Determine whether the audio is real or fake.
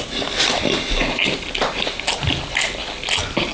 real